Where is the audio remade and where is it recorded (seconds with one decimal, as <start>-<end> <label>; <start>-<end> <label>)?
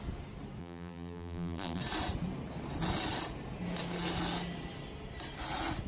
0.0-0.6 recorded; 0.6-1.8 remade; 1.8-5.9 recorded